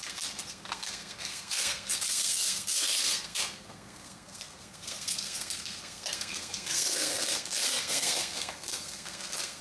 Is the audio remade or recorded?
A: remade